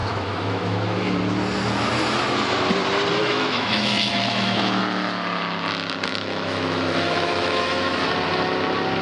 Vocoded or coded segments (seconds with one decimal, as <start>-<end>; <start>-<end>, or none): 0.0-1.1; 3.2-4.8; 6.1-8.1